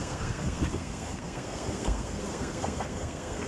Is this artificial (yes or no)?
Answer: yes